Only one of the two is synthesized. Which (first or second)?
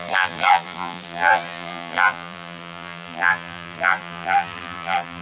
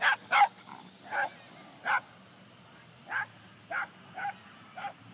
first